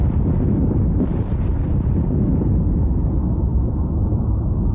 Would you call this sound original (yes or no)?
yes